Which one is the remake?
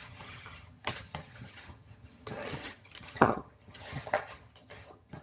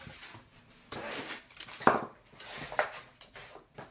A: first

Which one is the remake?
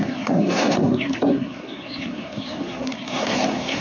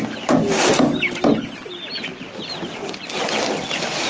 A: first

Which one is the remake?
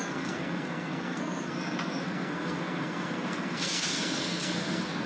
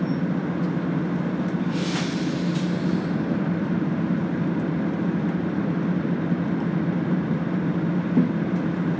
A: first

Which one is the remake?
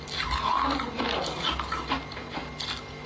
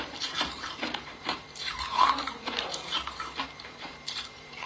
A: second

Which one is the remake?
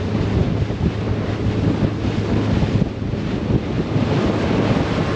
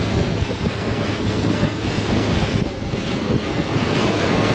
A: second